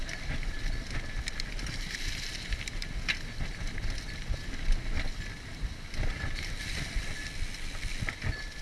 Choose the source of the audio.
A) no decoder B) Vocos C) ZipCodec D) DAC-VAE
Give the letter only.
A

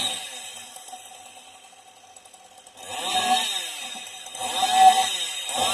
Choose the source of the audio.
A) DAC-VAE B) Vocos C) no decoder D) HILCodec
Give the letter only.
C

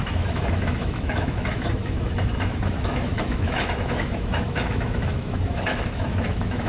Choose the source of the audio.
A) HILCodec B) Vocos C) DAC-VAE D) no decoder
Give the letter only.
C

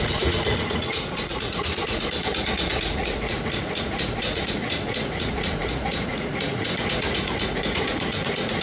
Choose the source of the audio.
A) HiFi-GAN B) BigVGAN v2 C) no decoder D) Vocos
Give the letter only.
D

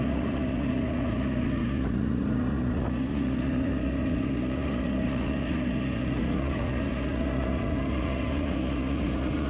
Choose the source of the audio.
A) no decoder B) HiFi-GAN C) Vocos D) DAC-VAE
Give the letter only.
C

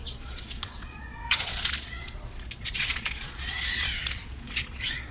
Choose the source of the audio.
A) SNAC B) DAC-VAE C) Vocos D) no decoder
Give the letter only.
C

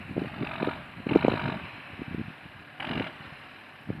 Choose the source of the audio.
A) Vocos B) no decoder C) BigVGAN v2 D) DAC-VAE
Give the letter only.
B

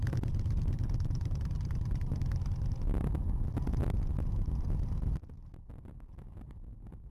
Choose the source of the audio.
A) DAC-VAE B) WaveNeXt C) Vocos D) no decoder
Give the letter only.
D